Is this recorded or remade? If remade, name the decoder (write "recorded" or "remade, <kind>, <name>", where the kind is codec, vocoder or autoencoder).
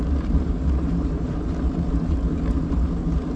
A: remade, vocoder, BigVGAN v2